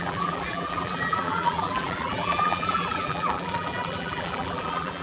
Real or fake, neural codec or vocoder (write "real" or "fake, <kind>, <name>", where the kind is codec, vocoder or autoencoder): fake, vocoder, BigVGAN v2